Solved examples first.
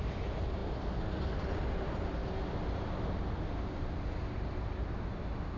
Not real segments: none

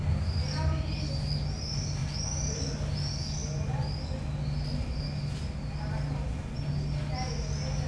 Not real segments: none

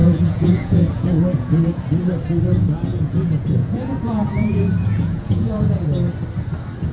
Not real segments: 0.0-1.6 (vocoder, Vocos); 2.9-5.8

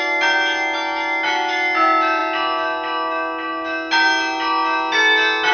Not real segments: none

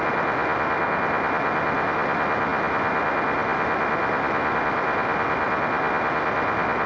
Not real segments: none